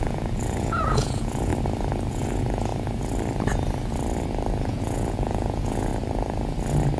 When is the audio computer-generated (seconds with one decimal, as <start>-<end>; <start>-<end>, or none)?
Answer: 0.0-1.5; 2.1-2.7; 4.7-5.9